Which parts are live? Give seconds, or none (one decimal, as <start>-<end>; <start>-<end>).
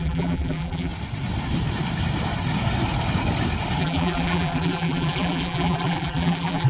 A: 0.9-3.8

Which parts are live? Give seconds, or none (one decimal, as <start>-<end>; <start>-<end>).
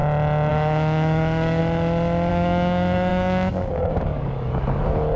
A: 0.0-0.5; 1.6-2.3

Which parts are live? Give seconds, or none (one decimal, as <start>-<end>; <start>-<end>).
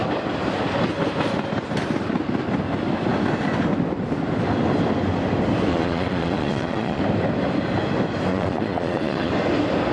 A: 0.0-5.7; 7.0-8.3; 9.3-9.9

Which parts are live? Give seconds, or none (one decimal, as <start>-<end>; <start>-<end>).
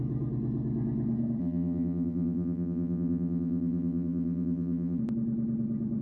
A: 0.0-1.4; 5.0-6.0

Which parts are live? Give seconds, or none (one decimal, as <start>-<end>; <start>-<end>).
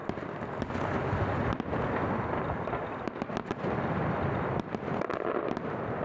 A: 0.0-6.0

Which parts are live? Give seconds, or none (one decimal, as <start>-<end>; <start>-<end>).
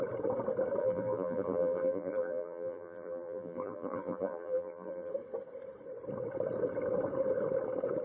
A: 0.0-0.8; 5.1-8.0